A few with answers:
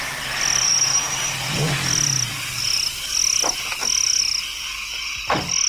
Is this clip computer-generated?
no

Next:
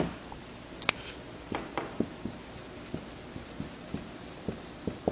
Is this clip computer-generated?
no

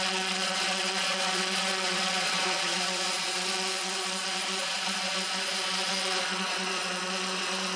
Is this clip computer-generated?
yes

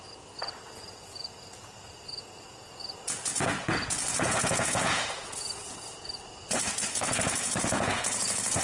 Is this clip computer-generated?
yes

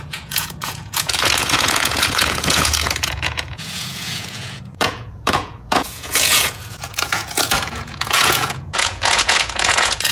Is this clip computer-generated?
yes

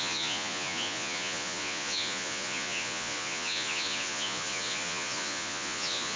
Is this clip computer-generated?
yes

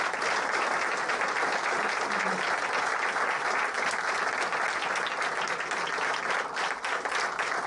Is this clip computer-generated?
no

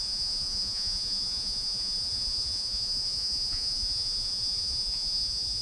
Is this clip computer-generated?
yes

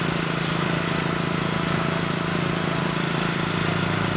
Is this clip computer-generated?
no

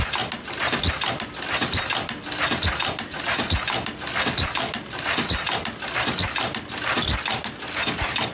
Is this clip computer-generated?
no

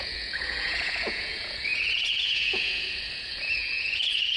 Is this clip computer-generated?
yes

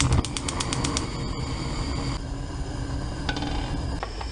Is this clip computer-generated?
no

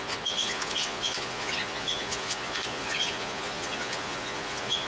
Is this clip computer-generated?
yes